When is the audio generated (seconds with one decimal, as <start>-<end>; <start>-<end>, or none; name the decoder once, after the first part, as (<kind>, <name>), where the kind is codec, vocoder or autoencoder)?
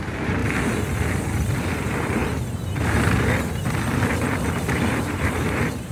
0.0-0.4 (vocoder, BigVGAN v2); 1.7-2.2; 4.7-5.9